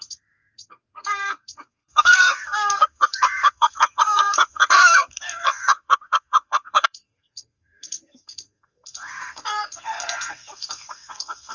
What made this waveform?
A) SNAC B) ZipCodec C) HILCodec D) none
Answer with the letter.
A